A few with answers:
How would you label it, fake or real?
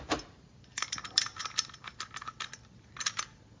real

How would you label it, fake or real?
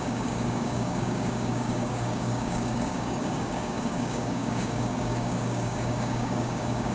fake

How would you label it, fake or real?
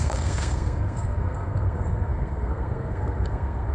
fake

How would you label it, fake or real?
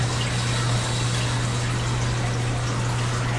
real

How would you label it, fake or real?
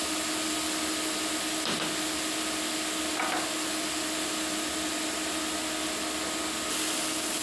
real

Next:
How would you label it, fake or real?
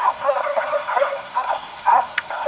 fake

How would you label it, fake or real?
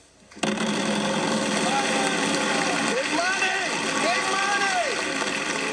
real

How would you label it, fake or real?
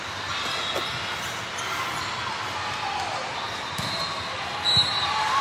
real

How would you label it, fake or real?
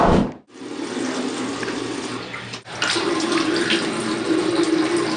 real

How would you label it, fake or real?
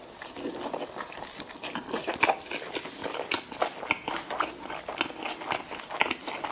real